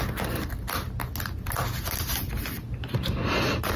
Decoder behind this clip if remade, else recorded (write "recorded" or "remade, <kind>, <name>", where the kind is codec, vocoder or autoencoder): recorded